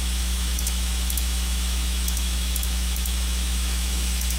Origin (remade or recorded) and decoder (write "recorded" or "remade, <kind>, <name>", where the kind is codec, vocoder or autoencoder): remade, autoencoder, DAC-VAE